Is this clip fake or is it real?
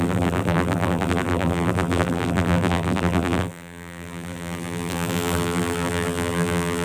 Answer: fake